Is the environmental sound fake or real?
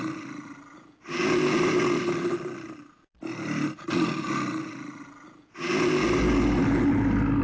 real